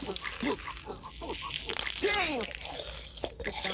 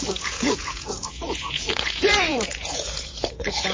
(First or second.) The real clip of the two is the first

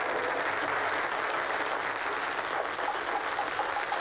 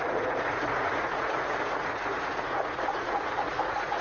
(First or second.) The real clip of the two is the first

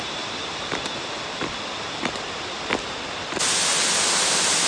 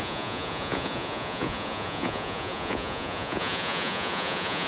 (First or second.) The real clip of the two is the first